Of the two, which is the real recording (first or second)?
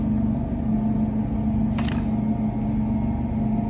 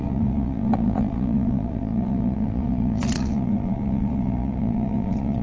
first